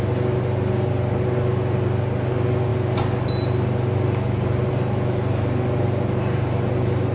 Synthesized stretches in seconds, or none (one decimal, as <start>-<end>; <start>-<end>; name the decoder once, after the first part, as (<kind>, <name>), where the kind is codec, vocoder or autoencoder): none